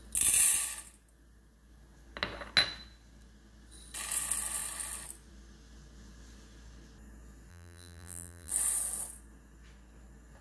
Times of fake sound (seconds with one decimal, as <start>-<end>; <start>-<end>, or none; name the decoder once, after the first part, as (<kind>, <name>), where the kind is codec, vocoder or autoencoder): 7.5-8.5 (vocoder, BigVGAN v2)